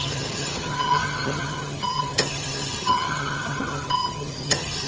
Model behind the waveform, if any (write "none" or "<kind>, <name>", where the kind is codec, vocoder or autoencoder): vocoder, HiFi-GAN